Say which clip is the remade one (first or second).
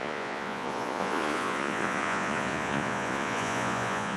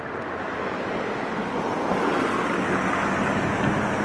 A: first